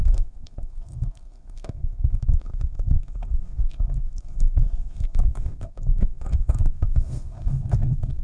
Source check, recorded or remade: remade